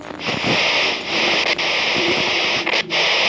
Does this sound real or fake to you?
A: real